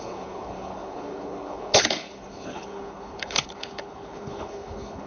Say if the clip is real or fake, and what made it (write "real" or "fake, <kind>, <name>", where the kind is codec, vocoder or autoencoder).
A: fake, codec, HILCodec